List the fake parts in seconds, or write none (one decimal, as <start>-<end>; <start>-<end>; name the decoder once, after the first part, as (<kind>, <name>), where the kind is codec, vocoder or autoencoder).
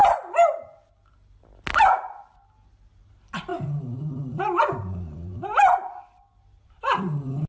0.0-0.5 (vocoder, BigVGAN v2); 3.5-7.5